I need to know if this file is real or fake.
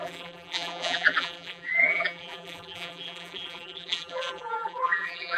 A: fake